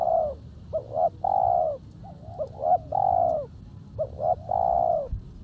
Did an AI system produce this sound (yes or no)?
no